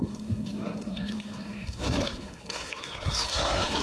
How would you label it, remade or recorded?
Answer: remade